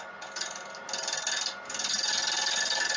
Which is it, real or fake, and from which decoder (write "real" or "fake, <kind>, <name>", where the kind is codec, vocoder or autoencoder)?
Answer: real